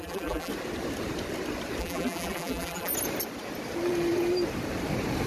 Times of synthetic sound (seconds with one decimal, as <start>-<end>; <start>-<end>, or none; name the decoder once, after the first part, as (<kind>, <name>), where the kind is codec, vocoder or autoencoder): 0.0-0.5 (vocoder, BigVGAN v2); 1.8-2.9